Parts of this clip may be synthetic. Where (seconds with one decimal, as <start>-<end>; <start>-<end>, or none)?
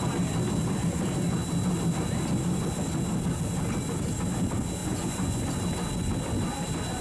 4.8-5.4